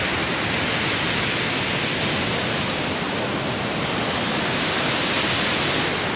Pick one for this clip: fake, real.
real